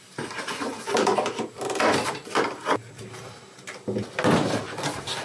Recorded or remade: recorded